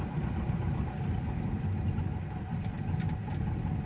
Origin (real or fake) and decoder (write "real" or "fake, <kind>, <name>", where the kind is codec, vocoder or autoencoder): real